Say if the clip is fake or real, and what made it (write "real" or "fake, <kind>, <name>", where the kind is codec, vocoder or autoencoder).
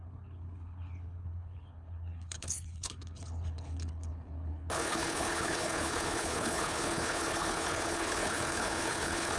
fake, codec, HILCodec